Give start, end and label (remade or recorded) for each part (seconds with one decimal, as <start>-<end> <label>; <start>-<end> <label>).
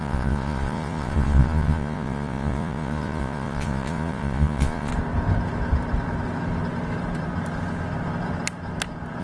0.0-4.9 remade; 4.9-9.2 recorded